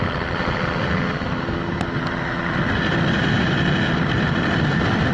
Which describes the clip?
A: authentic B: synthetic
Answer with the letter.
A